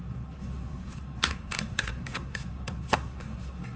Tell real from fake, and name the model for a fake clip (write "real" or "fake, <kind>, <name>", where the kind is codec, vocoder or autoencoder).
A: fake, codec, SNAC